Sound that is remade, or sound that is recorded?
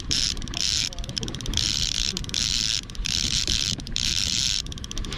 remade